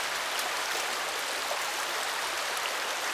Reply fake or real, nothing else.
fake